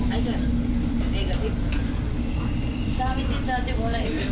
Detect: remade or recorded recorded